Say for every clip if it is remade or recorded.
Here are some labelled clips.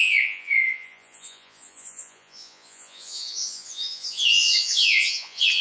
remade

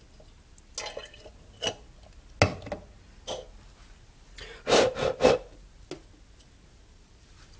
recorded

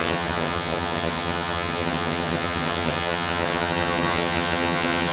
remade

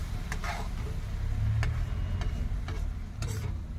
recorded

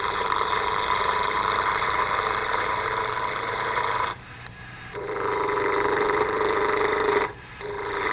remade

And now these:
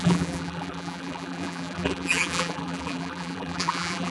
remade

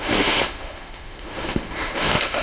remade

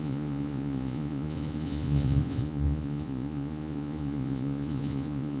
remade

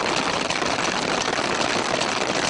recorded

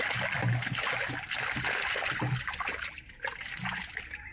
recorded